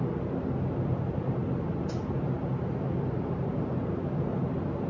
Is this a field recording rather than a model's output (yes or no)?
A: yes